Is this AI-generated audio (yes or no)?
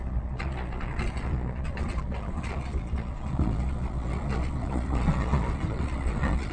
yes